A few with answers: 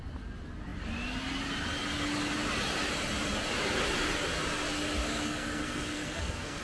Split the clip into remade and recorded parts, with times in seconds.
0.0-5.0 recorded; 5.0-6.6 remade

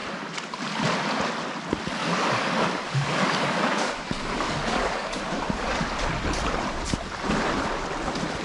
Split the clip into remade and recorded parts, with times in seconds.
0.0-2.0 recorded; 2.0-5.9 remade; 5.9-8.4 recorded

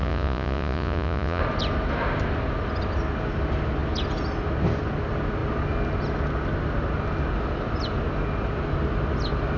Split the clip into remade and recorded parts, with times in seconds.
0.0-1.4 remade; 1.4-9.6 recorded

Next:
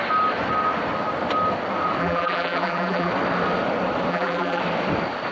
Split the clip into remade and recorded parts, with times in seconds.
0.0-2.0 recorded; 2.0-3.1 remade; 3.1-4.1 recorded; 4.1-4.6 remade; 4.6-5.3 recorded

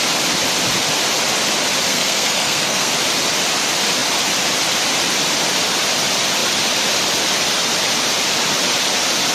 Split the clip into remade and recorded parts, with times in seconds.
0.0-1.9 recorded; 1.9-2.9 remade; 2.9-9.3 recorded

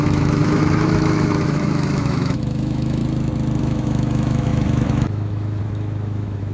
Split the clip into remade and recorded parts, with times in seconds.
0.0-3.0 remade; 3.0-3.6 recorded; 3.6-6.5 remade